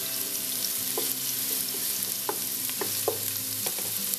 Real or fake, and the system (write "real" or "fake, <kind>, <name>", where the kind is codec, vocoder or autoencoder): real